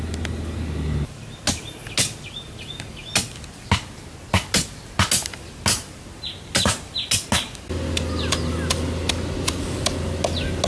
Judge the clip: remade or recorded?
recorded